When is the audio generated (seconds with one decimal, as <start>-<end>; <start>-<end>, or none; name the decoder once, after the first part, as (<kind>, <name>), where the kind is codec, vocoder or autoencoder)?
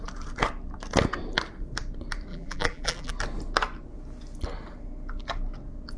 2.3-3.1 (vocoder, BigVGAN v2)